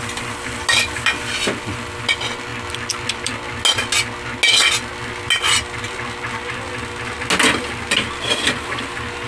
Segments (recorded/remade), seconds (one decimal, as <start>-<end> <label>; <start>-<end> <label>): 0.0-9.3 recorded